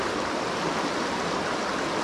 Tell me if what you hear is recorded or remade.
recorded